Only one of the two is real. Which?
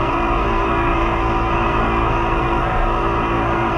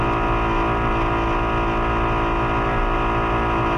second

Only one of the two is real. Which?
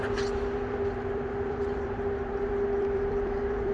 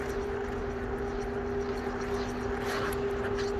second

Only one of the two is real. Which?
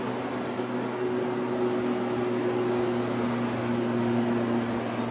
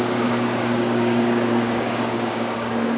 first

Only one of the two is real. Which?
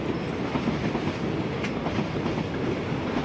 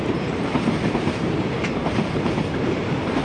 first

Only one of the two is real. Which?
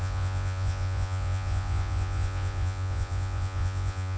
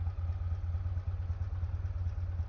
second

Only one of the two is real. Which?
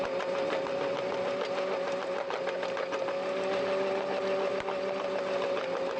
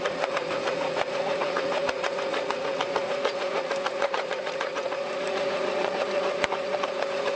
first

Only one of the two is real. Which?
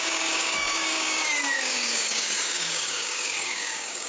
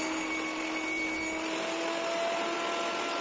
second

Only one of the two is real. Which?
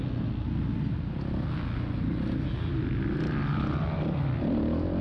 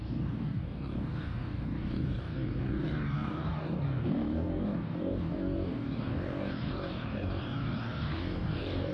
first